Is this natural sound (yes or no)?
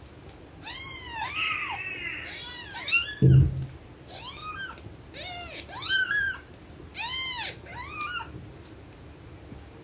yes